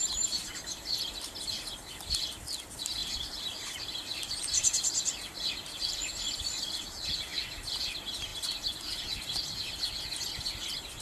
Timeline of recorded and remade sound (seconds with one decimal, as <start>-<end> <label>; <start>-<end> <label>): 0.0-3.0 recorded; 3.0-6.8 remade; 6.8-11.0 recorded